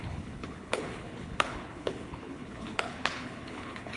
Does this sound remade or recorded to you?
remade